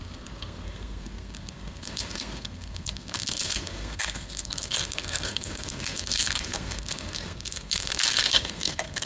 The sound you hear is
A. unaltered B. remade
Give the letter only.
B